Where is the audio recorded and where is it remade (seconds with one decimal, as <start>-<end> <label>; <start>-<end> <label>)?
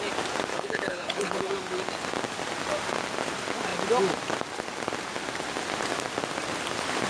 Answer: 0.0-0.5 recorded; 0.5-1.4 remade; 1.4-7.1 recorded